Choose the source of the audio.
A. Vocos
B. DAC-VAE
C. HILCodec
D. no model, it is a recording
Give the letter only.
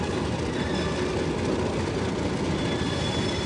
D